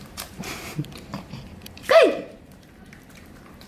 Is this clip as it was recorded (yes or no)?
no